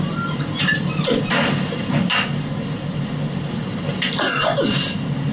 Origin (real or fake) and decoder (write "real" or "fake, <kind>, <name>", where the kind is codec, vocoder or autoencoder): fake, vocoder, BigVGAN v2